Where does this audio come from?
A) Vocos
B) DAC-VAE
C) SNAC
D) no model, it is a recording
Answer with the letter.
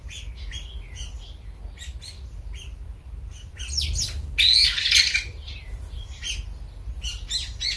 D